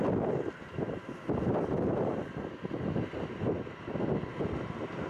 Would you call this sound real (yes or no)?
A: yes